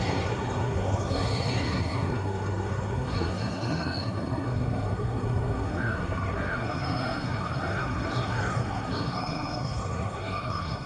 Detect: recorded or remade remade